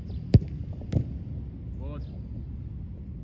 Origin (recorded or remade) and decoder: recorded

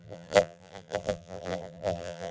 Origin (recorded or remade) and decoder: remade, vocoder, BigVGAN v2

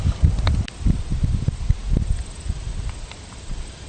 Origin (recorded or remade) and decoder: recorded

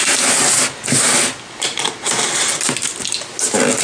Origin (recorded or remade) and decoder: recorded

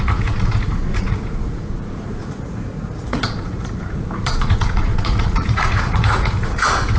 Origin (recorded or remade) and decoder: remade, vocoder, Vocos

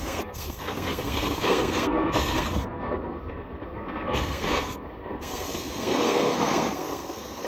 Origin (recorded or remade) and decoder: remade, codec, SNAC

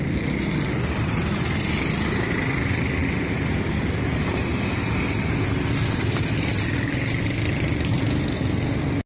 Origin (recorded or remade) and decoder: recorded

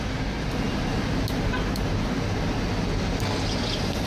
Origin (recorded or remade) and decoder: recorded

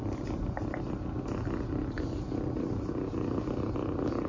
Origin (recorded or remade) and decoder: recorded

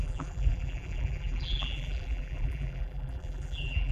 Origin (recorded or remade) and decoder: remade, vocoder, BigVGAN v2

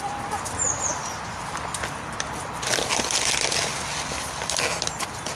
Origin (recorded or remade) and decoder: recorded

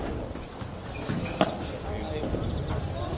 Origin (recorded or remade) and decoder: recorded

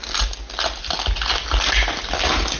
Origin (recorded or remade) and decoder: recorded